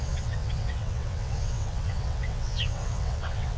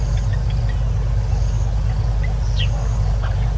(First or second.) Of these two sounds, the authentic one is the second